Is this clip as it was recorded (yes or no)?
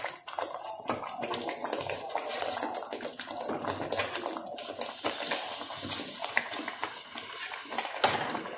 yes